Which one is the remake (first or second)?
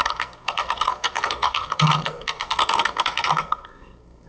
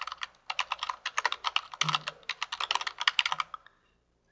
first